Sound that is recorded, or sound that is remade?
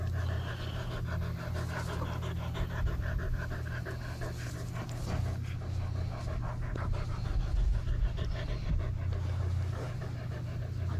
recorded